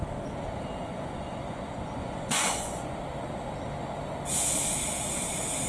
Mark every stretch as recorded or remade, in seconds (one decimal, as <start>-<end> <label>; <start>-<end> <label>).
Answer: 0.0-0.8 recorded; 0.8-3.0 remade; 3.0-5.7 recorded